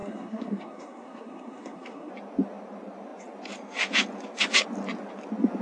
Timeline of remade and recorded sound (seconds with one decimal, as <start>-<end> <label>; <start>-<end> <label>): 0.0-2.1 remade; 2.1-5.6 recorded